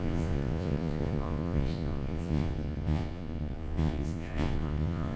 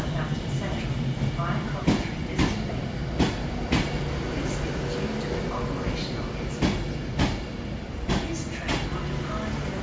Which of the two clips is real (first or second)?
second